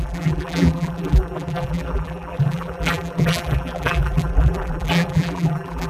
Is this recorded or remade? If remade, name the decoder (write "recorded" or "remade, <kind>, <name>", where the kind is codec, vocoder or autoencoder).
remade, vocoder, BigVGAN v2